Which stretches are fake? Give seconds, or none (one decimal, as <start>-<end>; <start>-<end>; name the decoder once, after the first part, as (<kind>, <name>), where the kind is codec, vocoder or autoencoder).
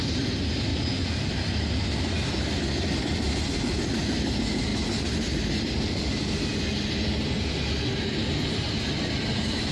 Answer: 0.7-1.4 (vocoder, BigVGAN v2)